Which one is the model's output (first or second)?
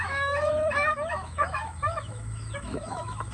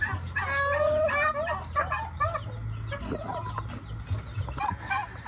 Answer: first